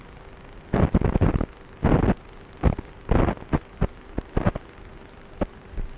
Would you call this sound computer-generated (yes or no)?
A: yes